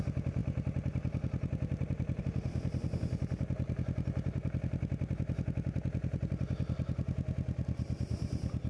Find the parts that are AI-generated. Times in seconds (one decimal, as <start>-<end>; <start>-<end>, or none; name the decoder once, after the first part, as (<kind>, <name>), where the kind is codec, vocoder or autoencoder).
none